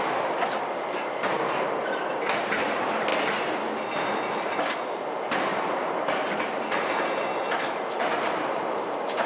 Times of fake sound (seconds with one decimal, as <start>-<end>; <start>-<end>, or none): 5.5-8.8